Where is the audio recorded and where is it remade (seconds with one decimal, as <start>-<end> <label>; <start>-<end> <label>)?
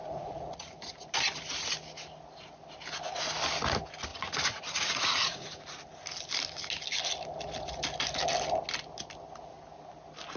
0.0-0.8 remade; 0.8-4.1 recorded; 4.1-5.6 remade; 5.6-10.4 recorded